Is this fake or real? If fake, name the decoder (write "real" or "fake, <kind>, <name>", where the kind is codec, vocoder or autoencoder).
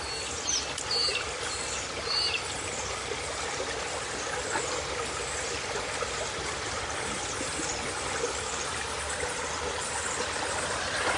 real